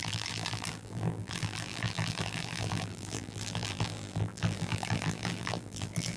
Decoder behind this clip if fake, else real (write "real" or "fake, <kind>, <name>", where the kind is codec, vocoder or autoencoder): fake, vocoder, BigVGAN v2